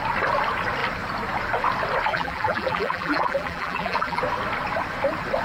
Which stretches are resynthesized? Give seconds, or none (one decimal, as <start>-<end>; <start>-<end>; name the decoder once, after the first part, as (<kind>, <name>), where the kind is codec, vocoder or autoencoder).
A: 2.1-4.2 (vocoder, BigVGAN v2)